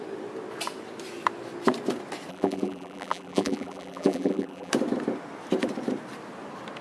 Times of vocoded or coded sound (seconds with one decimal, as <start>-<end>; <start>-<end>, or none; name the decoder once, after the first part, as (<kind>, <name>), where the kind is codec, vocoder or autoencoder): 2.3-4.7 (vocoder, BigVGAN v2)